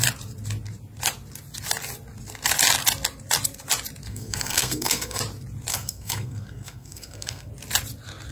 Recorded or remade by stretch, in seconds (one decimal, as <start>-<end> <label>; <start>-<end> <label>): 0.0-4.1 recorded; 4.1-5.2 remade; 5.2-5.7 recorded; 5.7-7.5 remade; 7.5-8.3 recorded